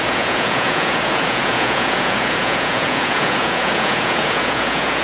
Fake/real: fake